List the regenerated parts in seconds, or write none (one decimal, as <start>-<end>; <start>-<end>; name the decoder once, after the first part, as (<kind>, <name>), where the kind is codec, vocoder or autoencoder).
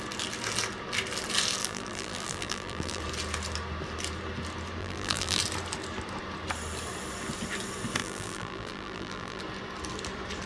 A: 1.6-3.0 (vocoder, BigVGAN v2); 4.8-5.4; 8.0-9.4